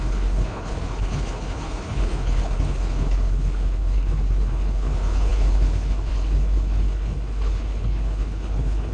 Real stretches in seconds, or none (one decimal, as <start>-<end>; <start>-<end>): none